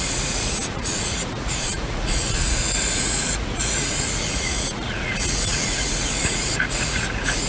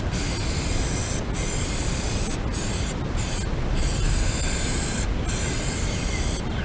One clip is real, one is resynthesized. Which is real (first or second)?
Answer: second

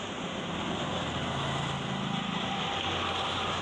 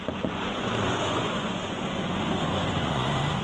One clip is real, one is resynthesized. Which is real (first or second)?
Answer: first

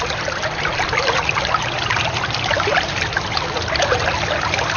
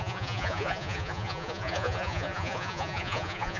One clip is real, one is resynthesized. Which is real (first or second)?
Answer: first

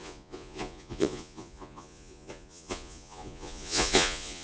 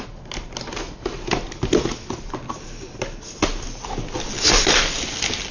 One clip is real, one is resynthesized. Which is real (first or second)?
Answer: second